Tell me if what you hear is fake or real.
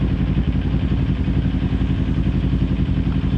real